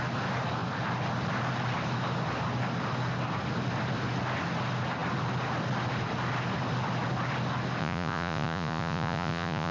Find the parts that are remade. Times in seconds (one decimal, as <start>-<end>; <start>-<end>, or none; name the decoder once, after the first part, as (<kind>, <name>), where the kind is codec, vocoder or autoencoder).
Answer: 7.8-9.7 (vocoder, Vocos)